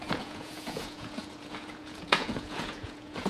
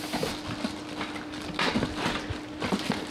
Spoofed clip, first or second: first